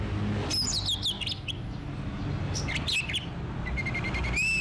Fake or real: real